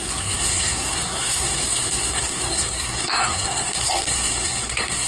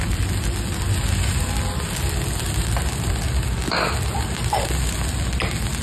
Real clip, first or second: second